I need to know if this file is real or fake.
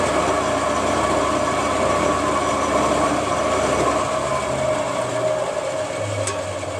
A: real